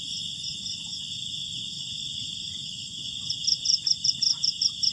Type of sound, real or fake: fake